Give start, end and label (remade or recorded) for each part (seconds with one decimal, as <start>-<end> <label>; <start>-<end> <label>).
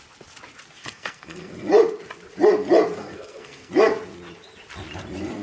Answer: 0.0-0.8 recorded; 0.8-1.5 remade; 1.5-3.0 recorded; 3.0-3.7 remade; 3.7-5.4 recorded